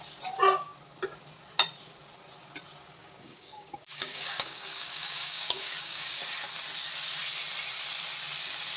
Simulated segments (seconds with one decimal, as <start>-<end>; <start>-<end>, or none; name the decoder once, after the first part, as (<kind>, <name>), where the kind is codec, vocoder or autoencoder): 3.0-6.2 (codec, DAC)